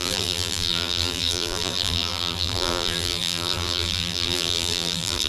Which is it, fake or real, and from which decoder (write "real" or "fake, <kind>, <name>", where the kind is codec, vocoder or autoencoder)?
fake, vocoder, BigVGAN v2